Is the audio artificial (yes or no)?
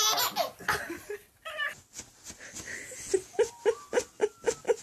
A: no